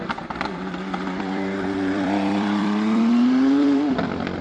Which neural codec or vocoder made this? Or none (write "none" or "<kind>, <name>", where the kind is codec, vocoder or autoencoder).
vocoder, BigVGAN v2